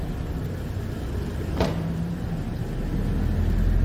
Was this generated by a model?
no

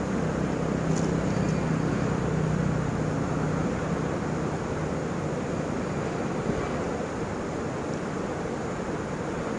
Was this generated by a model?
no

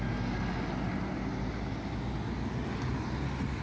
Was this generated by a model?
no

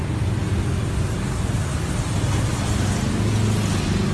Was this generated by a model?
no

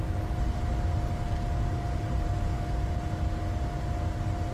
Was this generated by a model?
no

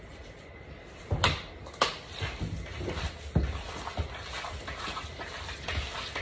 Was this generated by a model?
no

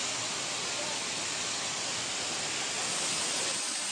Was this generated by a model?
no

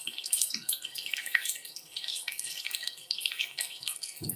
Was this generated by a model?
yes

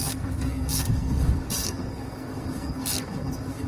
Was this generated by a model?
yes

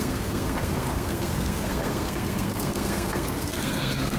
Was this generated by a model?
yes